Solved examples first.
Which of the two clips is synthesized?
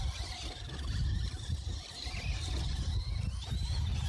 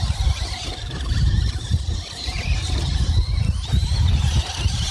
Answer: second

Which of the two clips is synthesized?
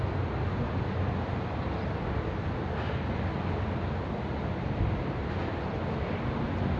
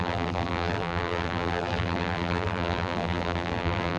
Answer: second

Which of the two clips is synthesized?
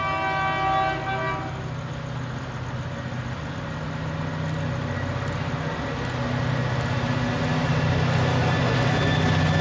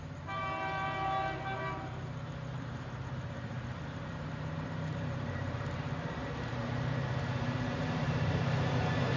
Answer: second